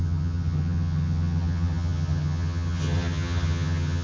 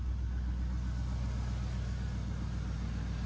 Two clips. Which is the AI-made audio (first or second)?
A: first